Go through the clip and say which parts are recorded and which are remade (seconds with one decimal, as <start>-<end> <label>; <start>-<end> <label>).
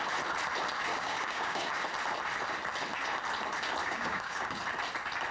0.0-0.9 recorded; 0.9-1.7 remade; 1.7-3.8 recorded; 3.8-4.6 remade; 4.6-5.3 recorded